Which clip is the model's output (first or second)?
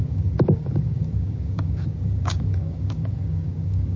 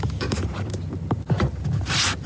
first